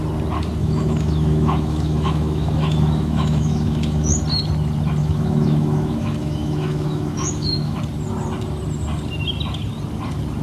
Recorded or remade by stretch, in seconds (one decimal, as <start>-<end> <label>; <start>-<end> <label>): 0.0-0.6 recorded; 0.6-4.2 remade; 4.2-5.0 recorded; 5.0-7.8 remade; 7.8-10.4 recorded